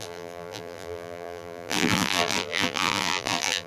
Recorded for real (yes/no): no